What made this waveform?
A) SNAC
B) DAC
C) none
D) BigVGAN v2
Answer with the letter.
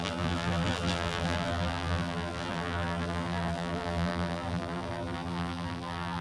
D